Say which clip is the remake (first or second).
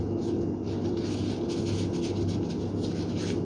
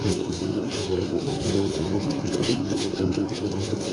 second